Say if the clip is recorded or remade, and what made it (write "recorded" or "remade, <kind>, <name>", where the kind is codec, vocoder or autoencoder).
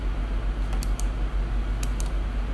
recorded